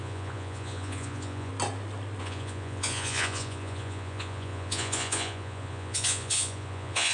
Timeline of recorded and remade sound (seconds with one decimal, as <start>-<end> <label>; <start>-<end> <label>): 0.0-1.5 remade; 1.5-2.2 recorded; 2.2-7.1 remade